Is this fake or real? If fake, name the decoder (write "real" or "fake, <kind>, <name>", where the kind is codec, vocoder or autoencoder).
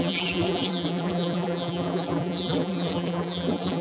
fake, vocoder, BigVGAN v2